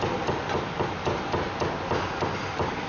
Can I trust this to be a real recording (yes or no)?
yes